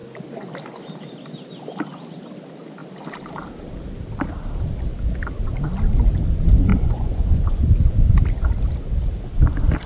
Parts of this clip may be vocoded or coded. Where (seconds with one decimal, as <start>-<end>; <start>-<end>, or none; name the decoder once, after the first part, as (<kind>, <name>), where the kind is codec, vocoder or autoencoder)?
6.7-7.6 (vocoder, Vocos)